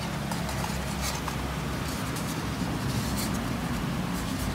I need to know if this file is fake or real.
real